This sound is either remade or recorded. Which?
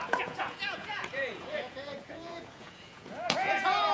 remade